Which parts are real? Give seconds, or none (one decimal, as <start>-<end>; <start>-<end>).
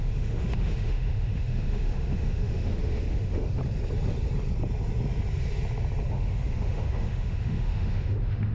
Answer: 3.6-6.1